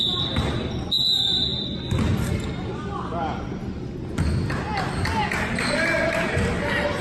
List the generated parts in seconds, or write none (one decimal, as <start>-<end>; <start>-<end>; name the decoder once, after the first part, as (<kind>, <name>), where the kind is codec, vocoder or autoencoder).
none